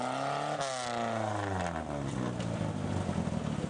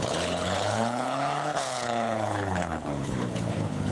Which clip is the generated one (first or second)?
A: second